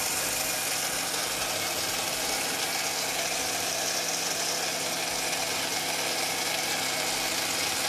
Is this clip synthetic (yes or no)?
no